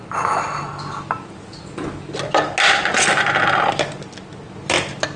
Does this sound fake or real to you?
real